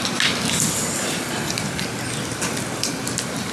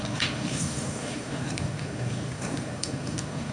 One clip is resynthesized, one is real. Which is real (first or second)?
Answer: first